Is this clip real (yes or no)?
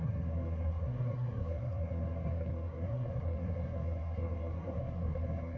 no